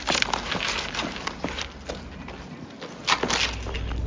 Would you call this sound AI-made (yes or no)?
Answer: no